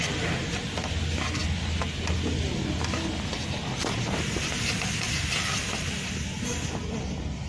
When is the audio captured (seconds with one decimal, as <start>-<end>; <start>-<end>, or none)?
0.0-7.5